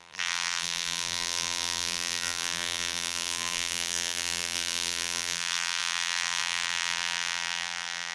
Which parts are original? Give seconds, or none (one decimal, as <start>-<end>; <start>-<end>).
none